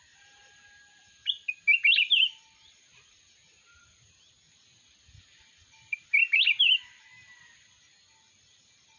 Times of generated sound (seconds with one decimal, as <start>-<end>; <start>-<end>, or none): none